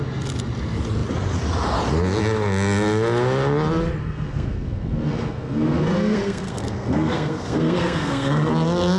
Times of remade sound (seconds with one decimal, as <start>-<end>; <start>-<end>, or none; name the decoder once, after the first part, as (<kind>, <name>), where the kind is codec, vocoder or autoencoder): 4.0-8.5 (codec, SNAC)